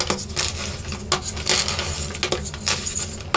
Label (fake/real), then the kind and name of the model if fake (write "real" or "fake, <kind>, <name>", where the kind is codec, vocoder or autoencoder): real